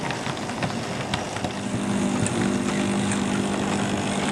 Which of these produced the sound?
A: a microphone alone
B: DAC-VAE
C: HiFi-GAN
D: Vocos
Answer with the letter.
A